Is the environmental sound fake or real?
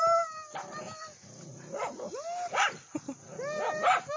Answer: fake